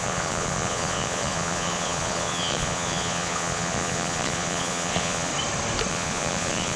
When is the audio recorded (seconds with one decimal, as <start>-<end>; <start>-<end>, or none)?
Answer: 5.3-5.9